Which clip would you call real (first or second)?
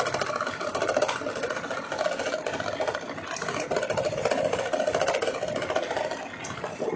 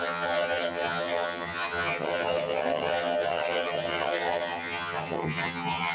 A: first